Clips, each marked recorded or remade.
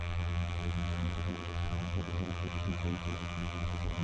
remade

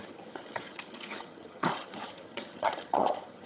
remade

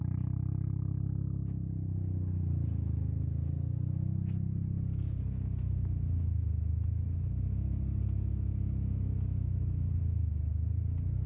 recorded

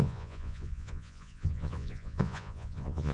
remade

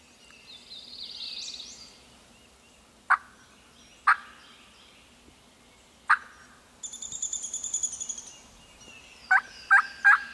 recorded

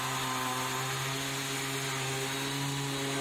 recorded